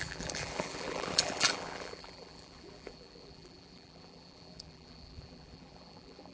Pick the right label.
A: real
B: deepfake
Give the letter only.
B